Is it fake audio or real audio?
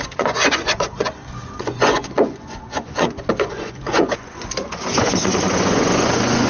fake